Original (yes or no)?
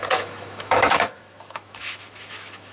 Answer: no